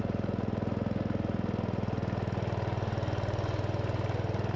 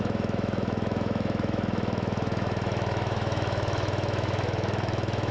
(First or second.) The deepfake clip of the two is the second